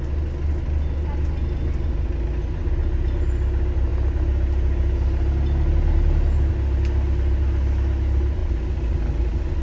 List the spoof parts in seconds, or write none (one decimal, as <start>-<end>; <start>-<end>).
none